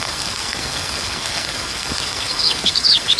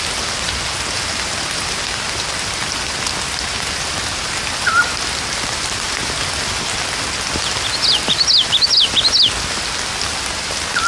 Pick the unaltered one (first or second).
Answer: second